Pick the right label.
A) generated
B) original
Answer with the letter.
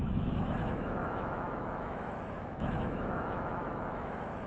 A